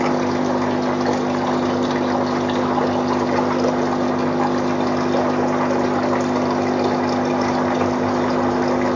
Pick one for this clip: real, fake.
real